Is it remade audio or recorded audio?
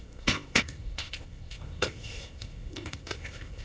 remade